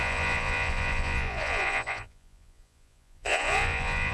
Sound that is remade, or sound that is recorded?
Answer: remade